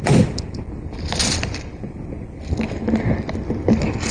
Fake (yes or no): no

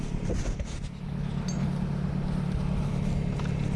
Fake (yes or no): no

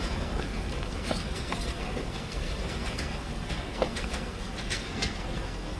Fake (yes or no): yes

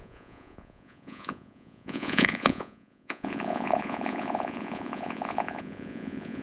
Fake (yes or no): yes